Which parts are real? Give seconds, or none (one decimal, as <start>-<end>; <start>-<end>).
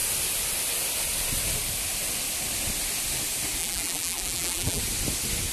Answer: 0.0-3.6; 4.8-5.5